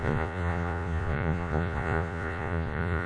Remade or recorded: remade